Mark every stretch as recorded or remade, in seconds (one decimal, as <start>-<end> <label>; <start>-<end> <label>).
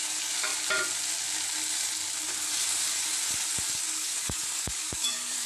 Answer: 0.0-0.5 remade; 0.5-3.8 recorded; 3.8-5.5 remade